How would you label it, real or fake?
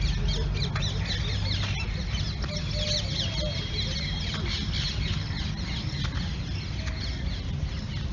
real